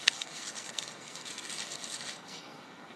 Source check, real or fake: fake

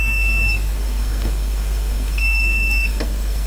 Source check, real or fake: fake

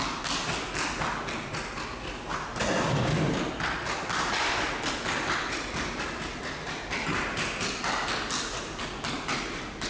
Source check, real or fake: real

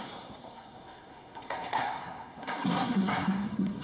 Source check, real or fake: fake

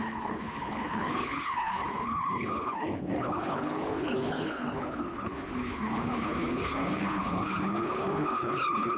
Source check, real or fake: fake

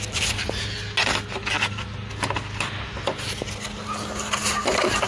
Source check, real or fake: real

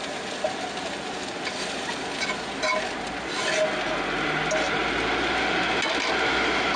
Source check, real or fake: real